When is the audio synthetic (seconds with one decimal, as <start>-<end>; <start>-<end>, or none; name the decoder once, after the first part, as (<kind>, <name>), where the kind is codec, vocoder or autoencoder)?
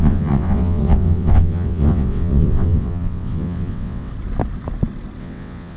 0.0-4.1 (vocoder, WaveNeXt); 5.2-5.8